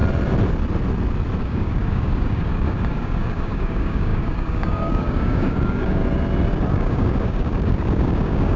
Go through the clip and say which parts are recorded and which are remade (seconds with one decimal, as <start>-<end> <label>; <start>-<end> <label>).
0.0-1.4 recorded; 1.4-6.0 remade; 6.0-6.7 recorded; 6.7-8.6 remade